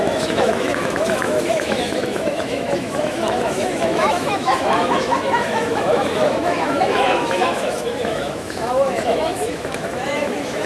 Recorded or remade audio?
remade